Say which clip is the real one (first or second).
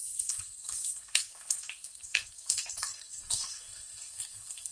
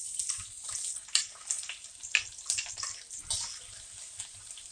second